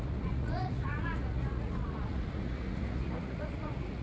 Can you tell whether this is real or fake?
fake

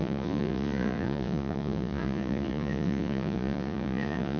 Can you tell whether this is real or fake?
fake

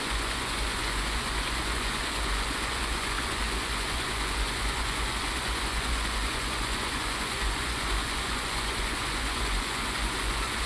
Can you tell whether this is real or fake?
fake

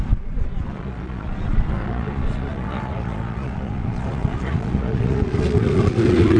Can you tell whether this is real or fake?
fake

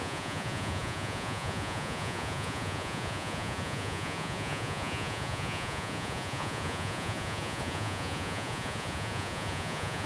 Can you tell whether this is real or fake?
fake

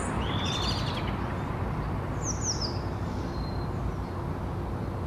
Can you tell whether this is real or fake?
real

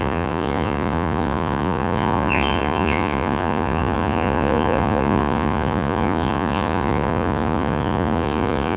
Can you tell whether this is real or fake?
fake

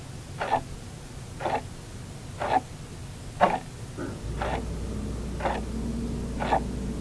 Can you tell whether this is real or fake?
real